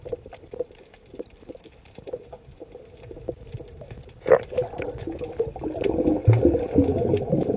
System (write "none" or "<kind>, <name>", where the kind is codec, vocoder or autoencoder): none